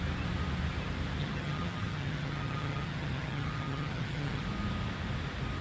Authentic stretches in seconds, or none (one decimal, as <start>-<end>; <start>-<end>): 0.0-1.2; 4.4-5.6